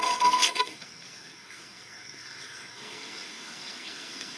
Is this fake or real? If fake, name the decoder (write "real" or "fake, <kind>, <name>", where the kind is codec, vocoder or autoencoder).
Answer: fake, codec, SNAC